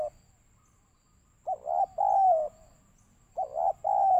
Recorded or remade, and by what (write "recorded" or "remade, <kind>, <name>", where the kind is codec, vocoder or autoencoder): recorded